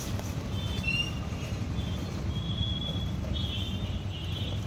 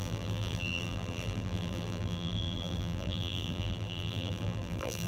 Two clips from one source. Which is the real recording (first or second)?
first